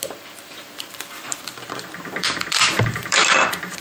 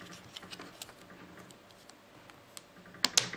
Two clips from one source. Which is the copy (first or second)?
first